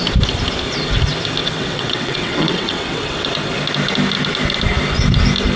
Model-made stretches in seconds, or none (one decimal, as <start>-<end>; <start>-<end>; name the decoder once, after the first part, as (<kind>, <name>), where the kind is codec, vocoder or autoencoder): 1.4-3.3 (vocoder, WaveNeXt)